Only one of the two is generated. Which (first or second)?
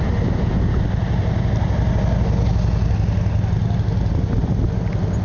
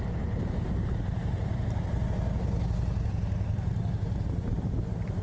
second